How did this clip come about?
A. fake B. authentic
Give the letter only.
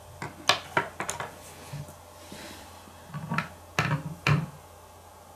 B